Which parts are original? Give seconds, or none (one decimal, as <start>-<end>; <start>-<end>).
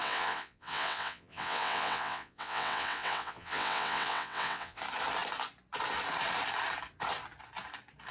4.8-8.1